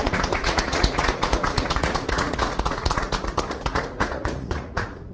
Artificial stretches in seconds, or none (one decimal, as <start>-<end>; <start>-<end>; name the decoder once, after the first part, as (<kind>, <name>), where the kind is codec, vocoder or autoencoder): 0.0-5.1 (vocoder, Vocos)